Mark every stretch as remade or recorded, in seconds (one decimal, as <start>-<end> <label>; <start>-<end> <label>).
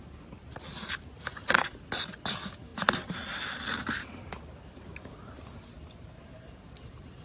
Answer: 0.0-7.2 recorded